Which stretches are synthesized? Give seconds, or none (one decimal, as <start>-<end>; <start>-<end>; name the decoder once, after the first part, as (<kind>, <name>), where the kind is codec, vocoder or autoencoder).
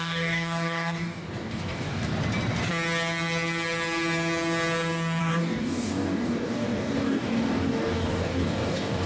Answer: 0.0-2.1 (codec, DAC); 5.2-9.1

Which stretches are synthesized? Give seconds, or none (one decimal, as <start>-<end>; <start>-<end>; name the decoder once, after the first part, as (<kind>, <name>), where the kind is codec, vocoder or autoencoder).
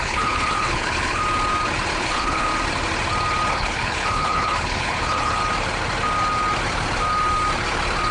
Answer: 0.0-1.2 (codec, HILCodec); 2.0-2.5; 3.5-5.4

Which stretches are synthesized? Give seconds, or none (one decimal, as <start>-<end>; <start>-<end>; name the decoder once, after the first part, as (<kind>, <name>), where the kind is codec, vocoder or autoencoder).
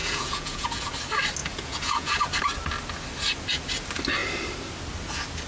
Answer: 0.0-0.8 (vocoder, Vocos); 1.4-2.2